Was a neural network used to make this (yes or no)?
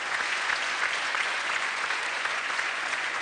yes